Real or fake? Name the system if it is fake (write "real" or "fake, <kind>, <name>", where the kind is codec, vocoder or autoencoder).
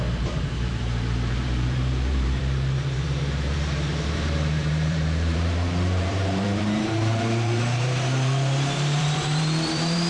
fake, vocoder, BigVGAN v2